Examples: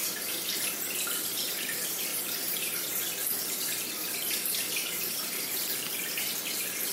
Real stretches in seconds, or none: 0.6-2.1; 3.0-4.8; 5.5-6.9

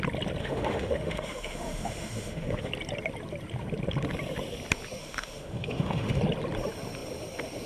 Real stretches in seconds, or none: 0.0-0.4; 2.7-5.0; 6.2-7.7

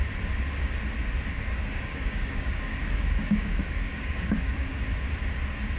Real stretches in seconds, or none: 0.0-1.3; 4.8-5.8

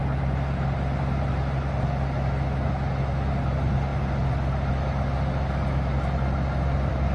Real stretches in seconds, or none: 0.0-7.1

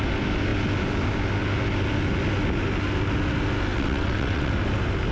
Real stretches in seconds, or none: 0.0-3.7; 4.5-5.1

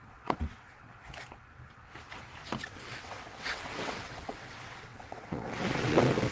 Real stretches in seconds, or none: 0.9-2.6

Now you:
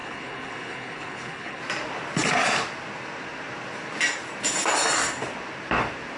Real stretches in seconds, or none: 1.6-6.2

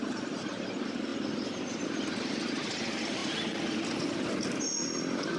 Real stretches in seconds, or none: 0.0-5.4